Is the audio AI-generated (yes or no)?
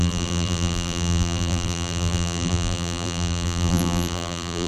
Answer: yes